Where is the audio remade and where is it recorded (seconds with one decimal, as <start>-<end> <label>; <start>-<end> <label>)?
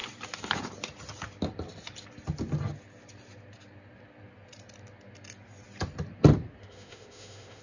0.0-6.6 recorded; 6.6-7.6 remade